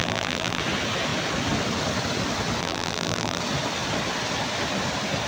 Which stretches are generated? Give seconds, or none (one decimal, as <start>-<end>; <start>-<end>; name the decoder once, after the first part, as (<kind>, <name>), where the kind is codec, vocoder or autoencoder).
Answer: 0.0-0.6 (vocoder, BigVGAN v2); 2.6-3.4

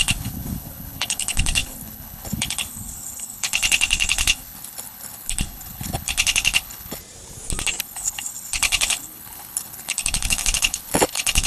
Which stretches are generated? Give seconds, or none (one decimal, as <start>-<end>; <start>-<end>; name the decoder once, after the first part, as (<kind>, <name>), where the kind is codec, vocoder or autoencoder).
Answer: 0.0-7.0 (codec, HILCodec); 7.8-11.5

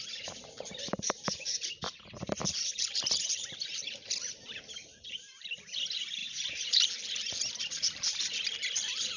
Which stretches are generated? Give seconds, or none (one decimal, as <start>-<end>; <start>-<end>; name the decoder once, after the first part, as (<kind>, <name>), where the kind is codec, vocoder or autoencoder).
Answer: 0.0-6.2 (vocoder, BigVGAN v2); 7.6-9.2

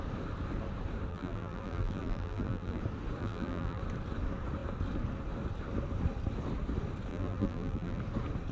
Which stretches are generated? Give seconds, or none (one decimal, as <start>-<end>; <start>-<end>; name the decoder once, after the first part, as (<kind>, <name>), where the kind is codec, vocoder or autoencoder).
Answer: 1.1-2.8 (vocoder, BigVGAN v2); 3.2-3.8; 7.1-8.0